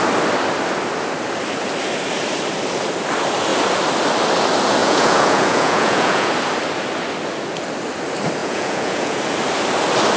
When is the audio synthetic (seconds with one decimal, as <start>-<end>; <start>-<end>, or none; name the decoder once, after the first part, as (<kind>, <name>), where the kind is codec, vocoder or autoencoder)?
4.8-6.3 (vocoder, Vocos); 8.4-9.2